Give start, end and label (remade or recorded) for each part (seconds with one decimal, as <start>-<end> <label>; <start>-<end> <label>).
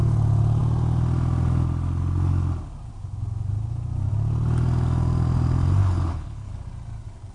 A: 0.0-5.8 recorded; 5.8-6.5 remade; 6.5-7.3 recorded